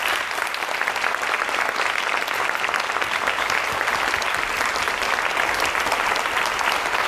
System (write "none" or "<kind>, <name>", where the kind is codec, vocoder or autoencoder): none